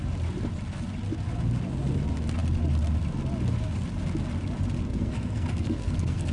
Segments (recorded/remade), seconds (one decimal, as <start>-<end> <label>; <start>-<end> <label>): 0.0-4.9 recorded; 4.9-6.3 remade

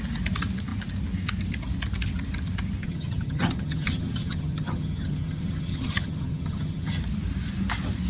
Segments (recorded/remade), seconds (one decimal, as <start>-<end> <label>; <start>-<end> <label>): 0.0-2.8 recorded; 2.8-7.0 remade; 7.0-8.1 recorded

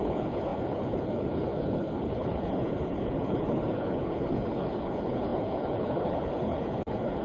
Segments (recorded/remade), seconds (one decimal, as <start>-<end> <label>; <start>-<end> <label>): 0.0-7.2 remade